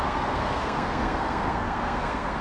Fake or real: fake